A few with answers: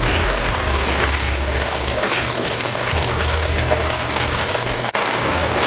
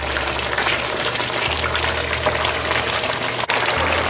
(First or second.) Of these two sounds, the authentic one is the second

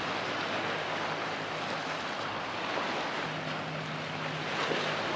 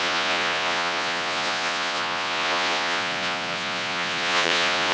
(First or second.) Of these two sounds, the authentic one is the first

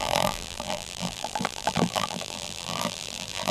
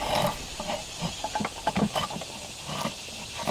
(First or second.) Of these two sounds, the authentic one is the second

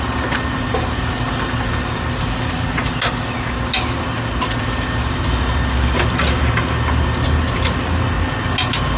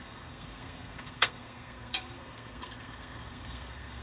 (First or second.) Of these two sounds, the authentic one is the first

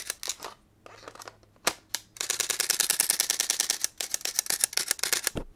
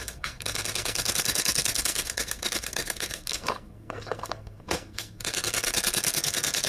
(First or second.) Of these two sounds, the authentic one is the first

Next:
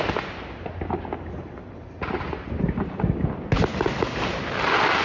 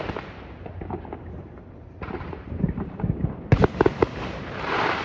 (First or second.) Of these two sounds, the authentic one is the first